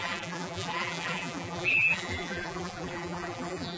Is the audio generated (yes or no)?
yes